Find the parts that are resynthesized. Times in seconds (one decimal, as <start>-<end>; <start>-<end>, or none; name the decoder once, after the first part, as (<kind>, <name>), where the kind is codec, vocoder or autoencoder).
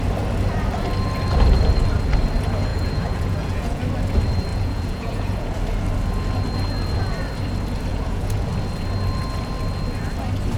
2.7-3.8 (vocoder, Vocos); 4.5-5.6; 7.9-8.5